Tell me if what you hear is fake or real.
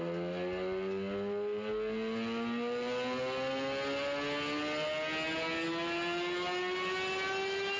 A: real